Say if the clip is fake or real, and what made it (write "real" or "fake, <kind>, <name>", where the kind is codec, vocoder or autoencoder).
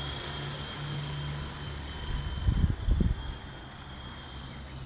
real